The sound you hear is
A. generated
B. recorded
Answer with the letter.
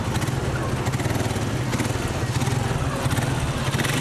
B